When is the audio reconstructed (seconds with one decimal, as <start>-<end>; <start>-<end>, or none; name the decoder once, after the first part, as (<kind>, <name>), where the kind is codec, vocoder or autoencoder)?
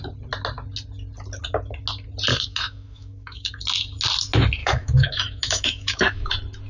2.3-3.6 (autoencoder, DAC-VAE); 4.6-6.3